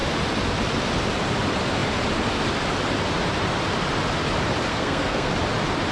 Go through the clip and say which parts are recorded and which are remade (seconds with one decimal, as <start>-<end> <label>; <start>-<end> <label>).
0.0-4.7 recorded; 4.7-5.3 remade; 5.3-5.9 recorded